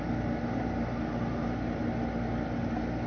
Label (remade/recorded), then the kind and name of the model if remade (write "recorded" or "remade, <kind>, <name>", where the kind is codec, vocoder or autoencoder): recorded